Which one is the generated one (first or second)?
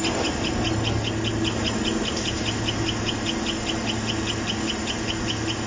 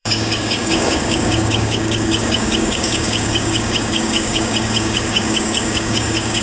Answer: second